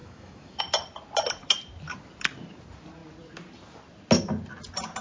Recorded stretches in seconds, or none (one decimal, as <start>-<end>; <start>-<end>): 0.6-5.0